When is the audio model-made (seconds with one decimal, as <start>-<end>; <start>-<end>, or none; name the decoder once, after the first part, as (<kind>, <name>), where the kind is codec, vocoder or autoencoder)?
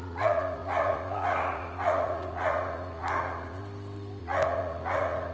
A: 0.0-3.6 (vocoder, Vocos); 4.2-5.3